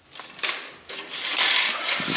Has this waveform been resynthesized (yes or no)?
no